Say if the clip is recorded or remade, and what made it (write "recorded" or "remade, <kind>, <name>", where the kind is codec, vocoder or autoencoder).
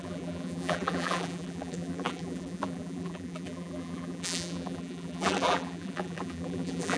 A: remade, vocoder, BigVGAN v2